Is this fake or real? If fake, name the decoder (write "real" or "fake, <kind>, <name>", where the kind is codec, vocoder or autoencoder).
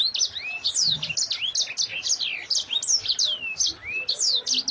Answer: real